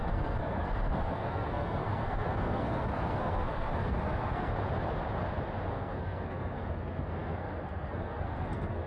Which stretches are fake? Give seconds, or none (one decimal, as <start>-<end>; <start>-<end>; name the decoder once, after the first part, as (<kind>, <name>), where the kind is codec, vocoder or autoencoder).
0.0-4.5 (codec, SNAC); 5.7-8.9